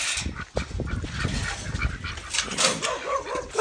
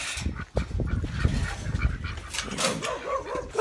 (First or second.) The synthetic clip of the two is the first